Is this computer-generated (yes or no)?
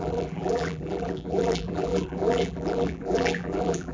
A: yes